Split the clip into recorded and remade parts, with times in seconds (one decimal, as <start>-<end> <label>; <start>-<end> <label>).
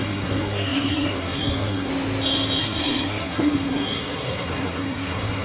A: 0.0-1.9 remade; 1.9-2.6 recorded; 2.6-5.4 remade